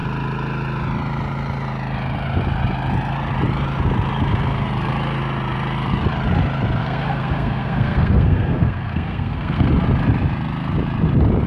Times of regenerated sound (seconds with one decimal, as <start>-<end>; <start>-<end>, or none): 6.8-9.7